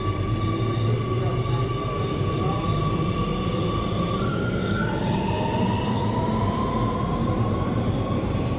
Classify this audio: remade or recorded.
recorded